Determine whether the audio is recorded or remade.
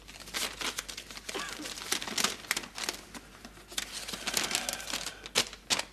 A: recorded